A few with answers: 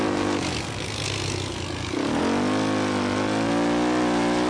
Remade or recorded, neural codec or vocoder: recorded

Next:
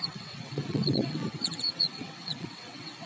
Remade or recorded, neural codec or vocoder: remade, vocoder, WaveNeXt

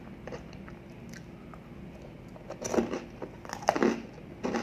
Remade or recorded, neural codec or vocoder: recorded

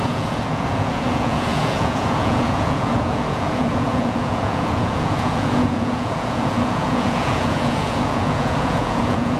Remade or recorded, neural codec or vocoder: remade, vocoder, Vocos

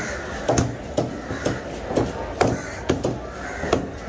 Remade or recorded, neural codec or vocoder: recorded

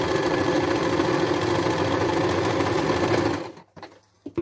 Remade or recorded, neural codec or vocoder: recorded